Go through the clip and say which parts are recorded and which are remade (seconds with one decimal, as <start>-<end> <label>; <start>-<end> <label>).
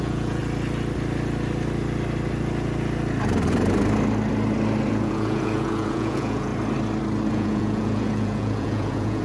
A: 0.0-0.4 remade; 0.4-4.9 recorded; 4.9-6.5 remade; 6.5-7.3 recorded; 7.3-9.2 remade